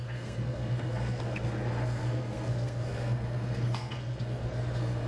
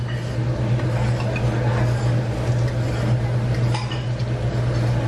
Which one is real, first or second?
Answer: second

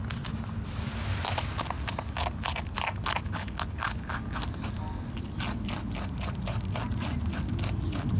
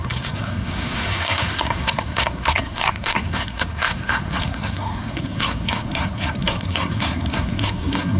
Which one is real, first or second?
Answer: first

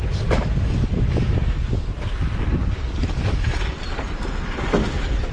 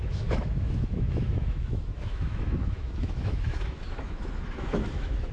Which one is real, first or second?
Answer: first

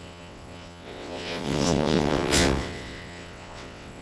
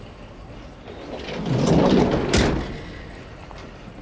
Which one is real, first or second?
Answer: second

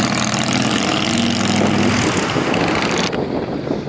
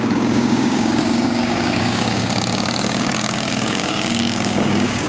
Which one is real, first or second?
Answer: first